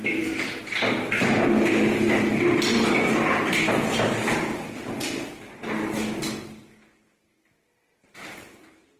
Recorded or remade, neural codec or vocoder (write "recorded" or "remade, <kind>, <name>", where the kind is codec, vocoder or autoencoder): remade, vocoder, BigVGAN v2